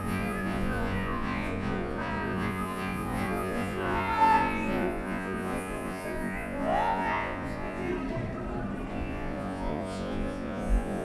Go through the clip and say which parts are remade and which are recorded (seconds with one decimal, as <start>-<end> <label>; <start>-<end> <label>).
0.0-7.9 remade; 7.9-8.9 recorded; 8.9-11.0 remade